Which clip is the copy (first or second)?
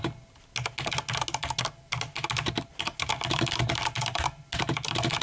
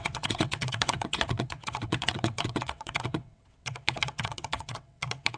second